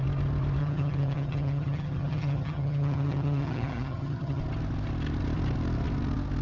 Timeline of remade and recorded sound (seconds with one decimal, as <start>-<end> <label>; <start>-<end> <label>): 0.0-0.6 recorded; 0.6-4.4 remade; 4.4-6.4 recorded